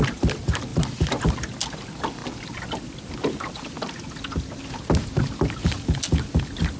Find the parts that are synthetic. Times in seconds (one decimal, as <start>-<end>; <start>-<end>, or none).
none